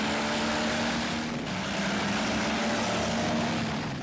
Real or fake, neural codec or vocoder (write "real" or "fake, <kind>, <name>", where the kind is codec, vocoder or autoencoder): real